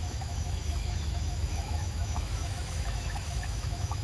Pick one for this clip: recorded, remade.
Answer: remade